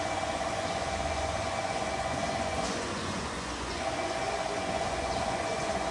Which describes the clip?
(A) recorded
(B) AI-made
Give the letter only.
B